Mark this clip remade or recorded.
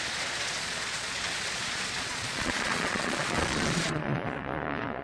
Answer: remade